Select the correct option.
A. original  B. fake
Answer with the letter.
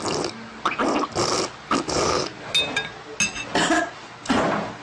A